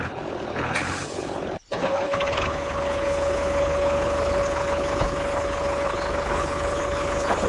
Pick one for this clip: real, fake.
fake